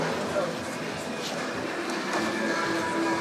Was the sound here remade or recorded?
recorded